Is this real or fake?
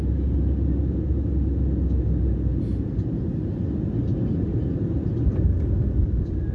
real